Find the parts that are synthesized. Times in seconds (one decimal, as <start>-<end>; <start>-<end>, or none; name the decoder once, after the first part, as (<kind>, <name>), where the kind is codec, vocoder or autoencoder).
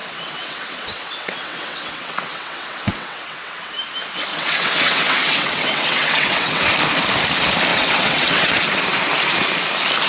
0.0-3.7 (vocoder, WaveNeXt); 4.3-6.7; 7.7-8.5